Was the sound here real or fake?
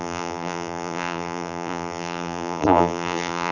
fake